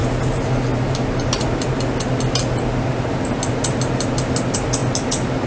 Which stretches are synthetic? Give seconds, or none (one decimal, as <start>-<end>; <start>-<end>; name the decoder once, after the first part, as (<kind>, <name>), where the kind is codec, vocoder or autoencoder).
none